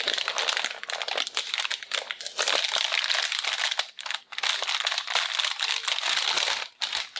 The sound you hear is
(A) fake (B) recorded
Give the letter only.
B